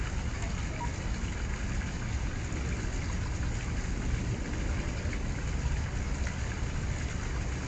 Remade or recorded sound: recorded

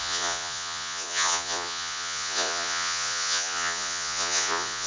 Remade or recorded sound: remade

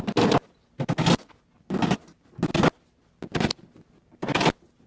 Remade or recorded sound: recorded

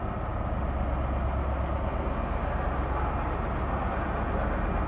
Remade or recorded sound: recorded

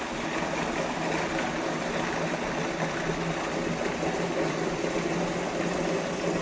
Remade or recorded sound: recorded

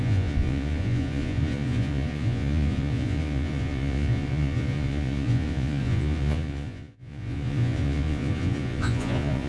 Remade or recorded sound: remade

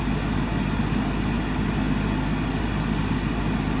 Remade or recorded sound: recorded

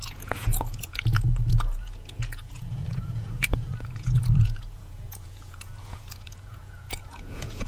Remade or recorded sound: remade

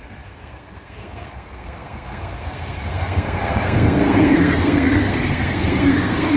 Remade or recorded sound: remade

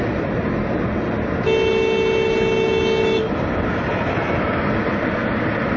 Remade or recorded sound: recorded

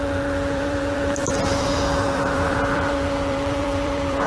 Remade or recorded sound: remade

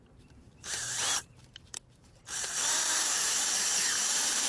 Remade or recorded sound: remade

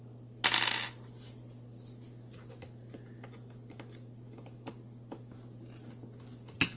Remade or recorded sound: recorded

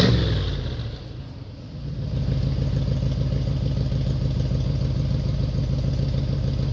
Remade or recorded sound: recorded